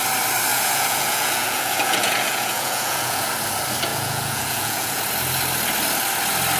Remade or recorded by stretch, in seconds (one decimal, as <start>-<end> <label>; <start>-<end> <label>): 0.0-0.5 recorded; 0.5-3.3 remade; 3.3-3.9 recorded; 3.9-5.0 remade; 5.0-6.6 recorded